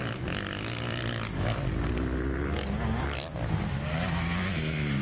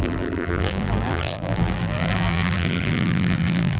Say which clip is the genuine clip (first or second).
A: first